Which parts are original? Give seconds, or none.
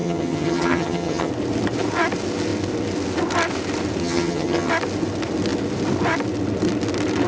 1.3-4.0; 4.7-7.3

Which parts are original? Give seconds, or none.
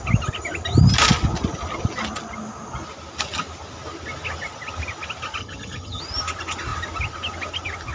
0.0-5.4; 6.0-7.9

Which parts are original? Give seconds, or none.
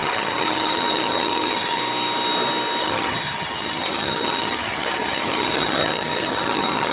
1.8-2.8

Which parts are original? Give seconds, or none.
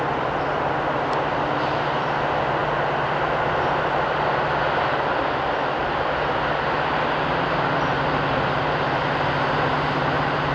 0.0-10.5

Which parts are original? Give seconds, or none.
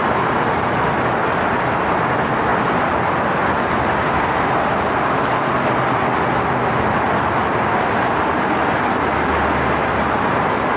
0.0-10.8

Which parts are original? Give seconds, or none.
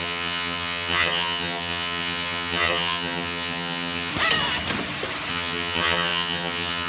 4.1-5.3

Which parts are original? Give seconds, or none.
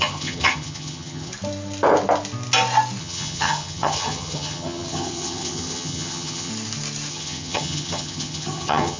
1.3-3.0; 6.5-7.1